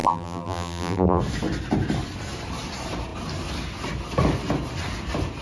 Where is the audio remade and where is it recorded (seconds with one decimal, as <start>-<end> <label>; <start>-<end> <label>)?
0.0-1.2 remade; 1.2-5.4 recorded